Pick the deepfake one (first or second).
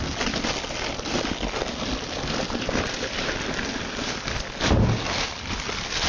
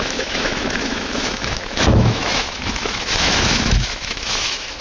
second